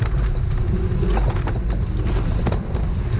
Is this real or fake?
real